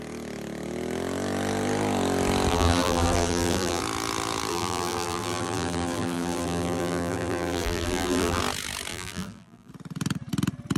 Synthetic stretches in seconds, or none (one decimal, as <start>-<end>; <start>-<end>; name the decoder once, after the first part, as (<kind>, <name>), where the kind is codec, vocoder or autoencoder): 2.5-3.8 (vocoder, BigVGAN v2); 4.5-8.4; 8.9-9.7